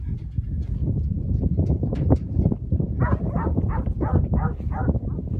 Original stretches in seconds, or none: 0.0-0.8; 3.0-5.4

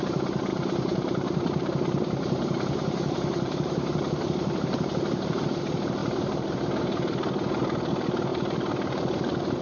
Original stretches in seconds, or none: 0.0-0.5; 5.6-6.0; 6.6-8.3

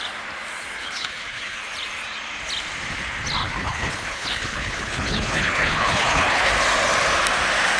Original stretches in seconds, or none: 0.0-0.8; 1.6-3.4; 6.5-7.8

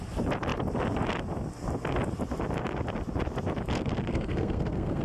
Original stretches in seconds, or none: 0.0-4.1

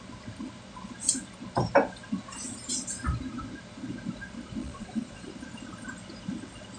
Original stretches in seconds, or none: 0.0-4.6; 5.3-6.8

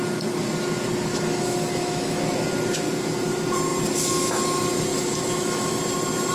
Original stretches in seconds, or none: 0.0-1.1; 2.2-4.9; 5.8-6.3

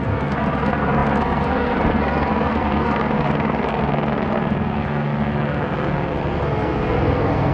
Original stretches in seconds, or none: none